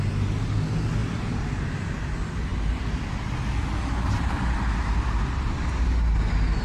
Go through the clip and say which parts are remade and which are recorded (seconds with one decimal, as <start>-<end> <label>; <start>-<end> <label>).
0.0-1.0 recorded; 1.0-1.6 remade; 1.6-6.6 recorded